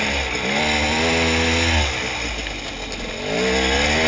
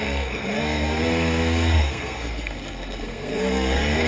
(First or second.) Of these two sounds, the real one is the first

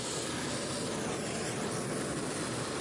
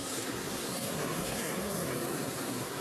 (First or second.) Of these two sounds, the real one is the first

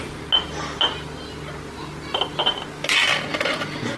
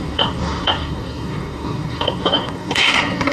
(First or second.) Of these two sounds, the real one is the first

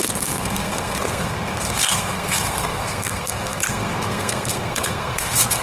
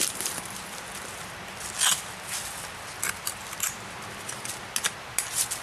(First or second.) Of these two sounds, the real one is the second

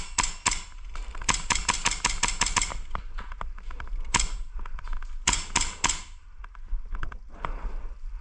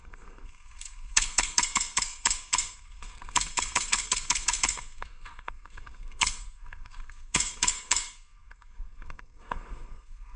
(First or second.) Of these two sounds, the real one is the first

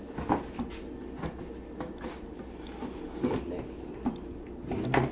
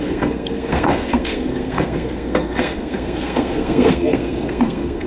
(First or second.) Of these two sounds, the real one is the first